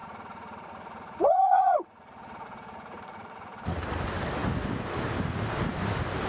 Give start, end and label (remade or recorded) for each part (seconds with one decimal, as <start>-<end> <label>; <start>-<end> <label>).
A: 0.0-3.8 remade; 3.8-6.3 recorded